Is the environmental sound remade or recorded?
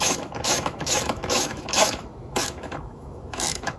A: remade